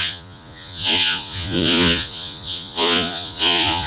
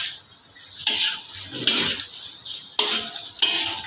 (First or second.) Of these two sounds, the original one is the second